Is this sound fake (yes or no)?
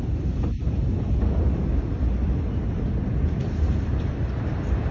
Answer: no